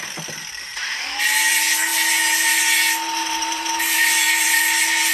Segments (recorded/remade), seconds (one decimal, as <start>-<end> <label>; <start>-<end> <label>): 0.0-3.2 recorded; 3.2-4.6 remade; 4.6-5.1 recorded